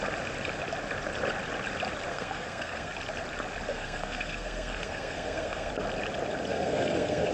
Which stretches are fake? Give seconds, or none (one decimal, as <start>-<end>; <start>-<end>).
2.1-2.9; 3.7-5.7; 6.5-7.3